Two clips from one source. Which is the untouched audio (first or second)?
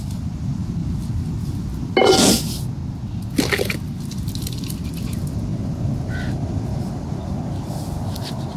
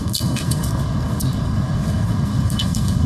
first